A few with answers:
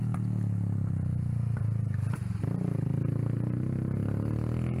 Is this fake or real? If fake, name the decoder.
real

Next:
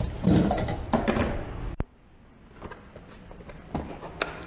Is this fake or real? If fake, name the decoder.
real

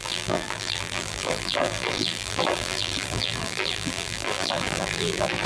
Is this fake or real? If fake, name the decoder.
fake, vocoder, BigVGAN v2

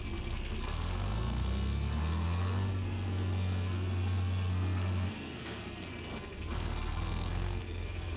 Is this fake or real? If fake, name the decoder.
fake, codec, SNAC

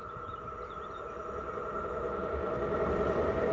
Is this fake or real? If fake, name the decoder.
fake, vocoder, BigVGAN v2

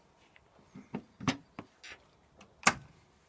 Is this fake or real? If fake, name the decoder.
real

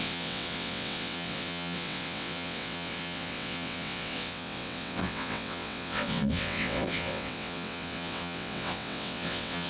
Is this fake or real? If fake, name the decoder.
fake, vocoder, WaveNeXt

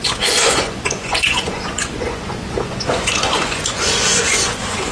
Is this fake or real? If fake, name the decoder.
fake, vocoder, Vocos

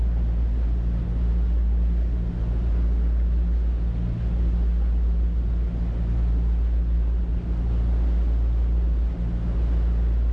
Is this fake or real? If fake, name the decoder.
real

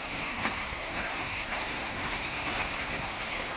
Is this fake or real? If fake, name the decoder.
fake, codec, SNAC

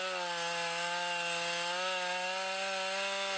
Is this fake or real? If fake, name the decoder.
real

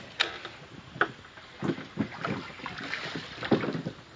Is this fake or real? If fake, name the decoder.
real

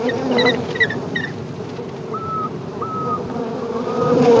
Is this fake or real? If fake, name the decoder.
real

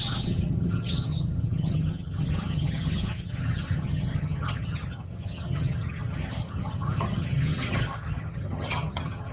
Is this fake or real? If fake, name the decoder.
fake, vocoder, HiFi-GAN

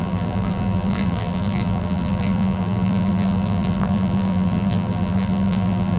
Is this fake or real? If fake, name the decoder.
fake, vocoder, BigVGAN v2